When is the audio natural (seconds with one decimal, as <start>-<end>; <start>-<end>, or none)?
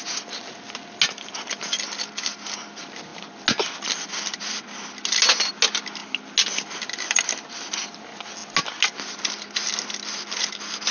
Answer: 0.0-10.9